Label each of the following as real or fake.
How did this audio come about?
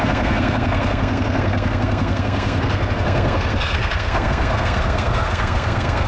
fake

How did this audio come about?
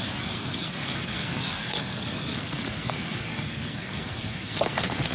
fake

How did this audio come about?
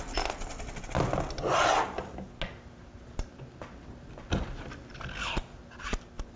real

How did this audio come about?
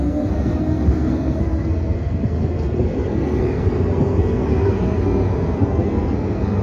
fake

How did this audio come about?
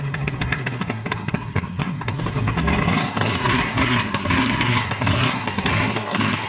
fake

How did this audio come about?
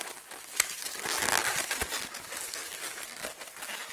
real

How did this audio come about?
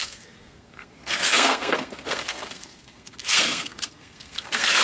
fake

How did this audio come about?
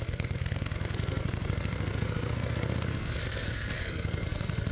fake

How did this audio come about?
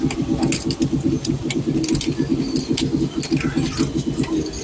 real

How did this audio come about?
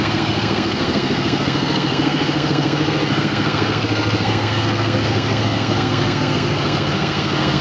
fake